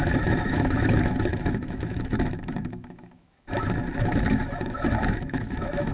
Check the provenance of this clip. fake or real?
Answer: fake